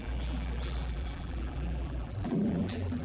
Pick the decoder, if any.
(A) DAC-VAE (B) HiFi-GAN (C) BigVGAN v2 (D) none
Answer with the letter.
C